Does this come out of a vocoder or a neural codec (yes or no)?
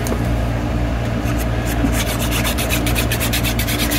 no